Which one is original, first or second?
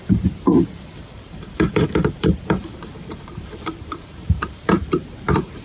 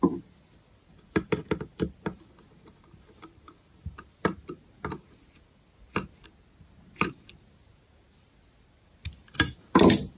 second